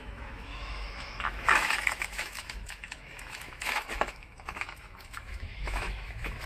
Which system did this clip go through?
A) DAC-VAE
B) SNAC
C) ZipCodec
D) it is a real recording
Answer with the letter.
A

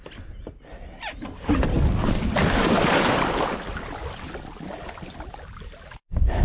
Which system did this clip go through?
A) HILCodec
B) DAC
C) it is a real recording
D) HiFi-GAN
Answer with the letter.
C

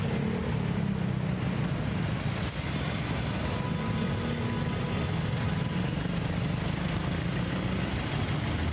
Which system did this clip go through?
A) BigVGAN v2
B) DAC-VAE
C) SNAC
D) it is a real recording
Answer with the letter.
D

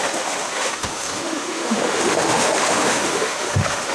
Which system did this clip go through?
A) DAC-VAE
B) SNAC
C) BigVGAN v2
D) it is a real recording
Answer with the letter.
A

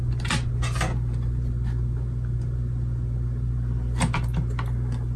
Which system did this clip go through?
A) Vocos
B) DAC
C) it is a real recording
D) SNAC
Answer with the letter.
C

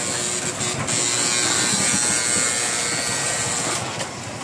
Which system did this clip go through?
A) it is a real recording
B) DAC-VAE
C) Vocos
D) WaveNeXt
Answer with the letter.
A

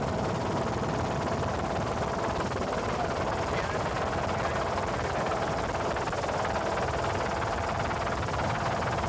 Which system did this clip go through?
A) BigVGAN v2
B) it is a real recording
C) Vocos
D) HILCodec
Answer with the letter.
B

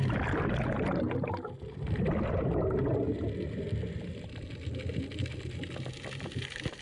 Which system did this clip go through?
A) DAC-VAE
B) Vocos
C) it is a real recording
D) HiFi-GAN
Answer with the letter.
C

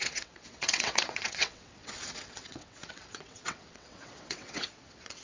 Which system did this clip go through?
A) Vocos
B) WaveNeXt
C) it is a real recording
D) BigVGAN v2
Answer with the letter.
B